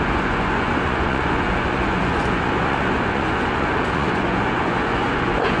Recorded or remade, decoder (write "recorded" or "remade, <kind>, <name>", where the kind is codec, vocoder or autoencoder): remade, vocoder, Vocos